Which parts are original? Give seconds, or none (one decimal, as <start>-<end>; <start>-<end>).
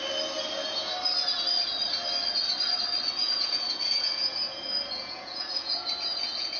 0.0-0.5; 0.9-3.2